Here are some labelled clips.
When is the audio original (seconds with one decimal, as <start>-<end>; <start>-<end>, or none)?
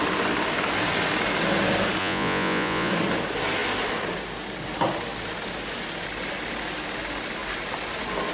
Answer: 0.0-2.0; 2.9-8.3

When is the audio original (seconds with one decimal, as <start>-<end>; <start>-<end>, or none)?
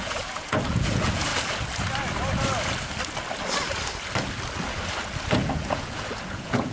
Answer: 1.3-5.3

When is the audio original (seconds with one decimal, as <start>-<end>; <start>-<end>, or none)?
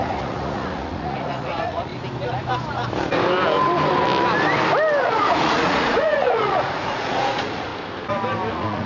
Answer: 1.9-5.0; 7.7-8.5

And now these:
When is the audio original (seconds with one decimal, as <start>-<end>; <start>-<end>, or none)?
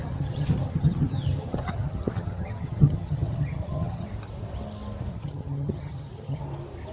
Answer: 4.1-5.1; 6.4-6.9